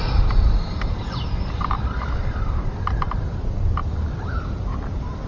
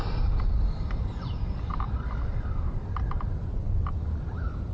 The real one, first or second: second